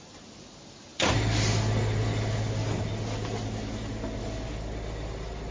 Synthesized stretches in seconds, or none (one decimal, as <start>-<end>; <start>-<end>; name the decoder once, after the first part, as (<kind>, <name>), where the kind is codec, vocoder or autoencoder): none